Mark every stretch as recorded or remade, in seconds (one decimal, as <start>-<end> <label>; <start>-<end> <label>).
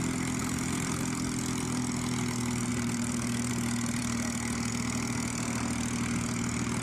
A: 0.0-0.4 recorded; 0.4-1.0 remade; 1.0-2.7 recorded; 2.7-3.5 remade; 3.5-6.8 recorded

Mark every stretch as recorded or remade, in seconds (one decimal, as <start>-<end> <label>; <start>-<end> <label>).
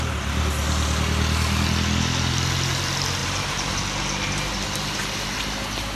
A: 0.0-3.2 recorded; 3.2-3.7 remade; 3.7-5.9 recorded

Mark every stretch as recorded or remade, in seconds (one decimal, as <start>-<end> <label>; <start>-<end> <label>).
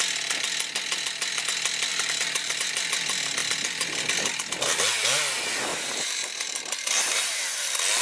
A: 0.0-1.9 recorded; 1.9-2.7 remade; 2.7-5.7 recorded; 5.7-7.3 remade; 7.3-8.0 recorded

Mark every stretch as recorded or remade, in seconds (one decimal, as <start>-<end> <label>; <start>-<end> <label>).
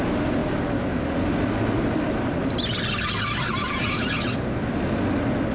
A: 0.0-5.5 recorded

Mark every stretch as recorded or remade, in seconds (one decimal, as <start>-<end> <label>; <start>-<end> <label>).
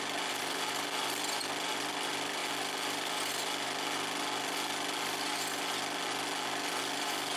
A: 0.0-2.4 remade; 2.4-6.8 recorded; 6.8-7.4 remade